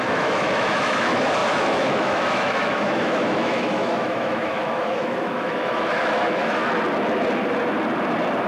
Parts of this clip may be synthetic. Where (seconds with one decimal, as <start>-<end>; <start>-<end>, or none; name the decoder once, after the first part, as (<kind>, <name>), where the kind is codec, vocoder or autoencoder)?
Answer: 0.0-6.6 (autoencoder, DAC-VAE)